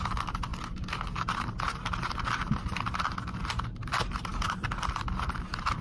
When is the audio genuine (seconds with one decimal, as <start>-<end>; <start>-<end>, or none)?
0.5-3.4